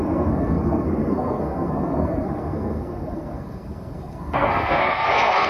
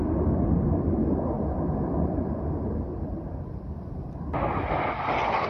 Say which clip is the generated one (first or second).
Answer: first